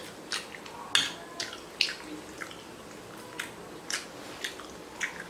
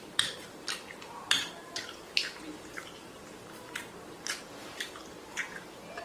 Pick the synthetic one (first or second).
second